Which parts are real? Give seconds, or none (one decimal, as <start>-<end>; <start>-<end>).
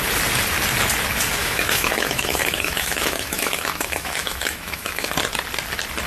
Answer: 0.0-1.4; 5.1-6.1